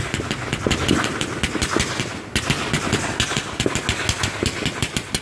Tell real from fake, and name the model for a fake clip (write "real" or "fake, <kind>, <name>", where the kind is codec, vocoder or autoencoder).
real